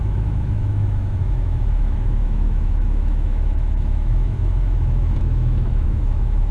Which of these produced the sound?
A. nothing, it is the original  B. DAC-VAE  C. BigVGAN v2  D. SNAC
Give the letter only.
B